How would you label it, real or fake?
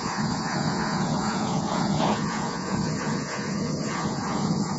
fake